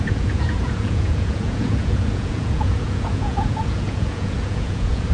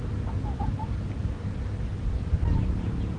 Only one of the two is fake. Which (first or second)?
first